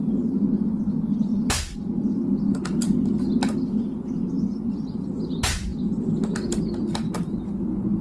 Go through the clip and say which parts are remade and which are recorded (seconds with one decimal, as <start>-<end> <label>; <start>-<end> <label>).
0.0-8.0 recorded